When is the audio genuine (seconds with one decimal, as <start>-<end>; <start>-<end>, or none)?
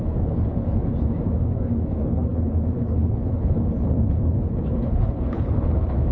0.9-1.9